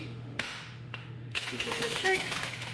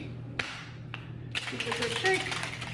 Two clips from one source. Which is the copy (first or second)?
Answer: first